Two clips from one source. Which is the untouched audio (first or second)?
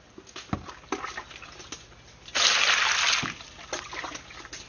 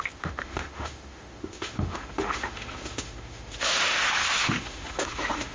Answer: first